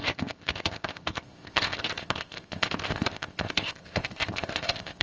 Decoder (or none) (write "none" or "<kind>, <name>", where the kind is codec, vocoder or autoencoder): codec, ZipCodec